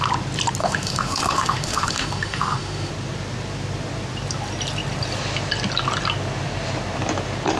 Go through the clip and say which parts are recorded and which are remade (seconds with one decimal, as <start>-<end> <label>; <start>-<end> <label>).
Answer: 0.0-0.6 recorded; 0.6-2.9 remade; 2.9-7.6 recorded